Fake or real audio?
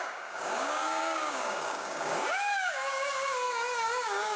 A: fake